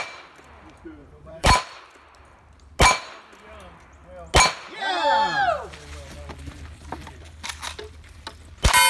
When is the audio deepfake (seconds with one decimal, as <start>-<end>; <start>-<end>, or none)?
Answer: 1.0-1.9

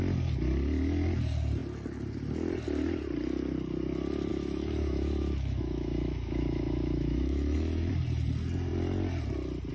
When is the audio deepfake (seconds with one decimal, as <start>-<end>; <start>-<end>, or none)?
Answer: 4.3-7.9

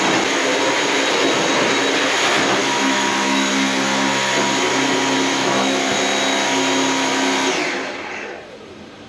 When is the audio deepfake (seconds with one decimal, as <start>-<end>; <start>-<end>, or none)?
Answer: 2.6-3.5; 5.3-5.9